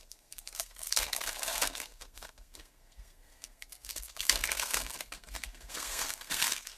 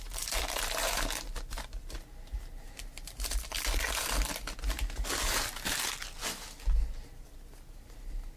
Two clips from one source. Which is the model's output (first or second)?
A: first